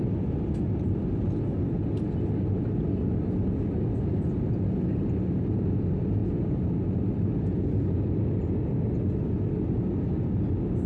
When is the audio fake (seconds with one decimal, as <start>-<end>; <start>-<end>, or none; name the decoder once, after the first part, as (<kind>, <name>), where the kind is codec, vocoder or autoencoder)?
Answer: none